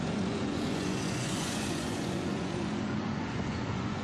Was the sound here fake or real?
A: fake